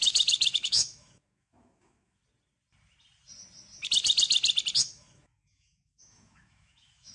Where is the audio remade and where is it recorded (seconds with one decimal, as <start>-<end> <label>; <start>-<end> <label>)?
0.0-2.2 remade; 2.2-4.8 recorded; 4.8-7.1 remade